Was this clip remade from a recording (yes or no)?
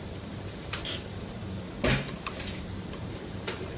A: yes